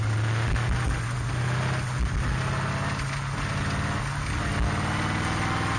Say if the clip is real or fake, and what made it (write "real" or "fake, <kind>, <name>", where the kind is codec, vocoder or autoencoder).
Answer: real